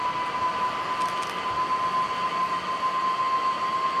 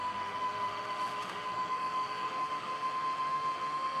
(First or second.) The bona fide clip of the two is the first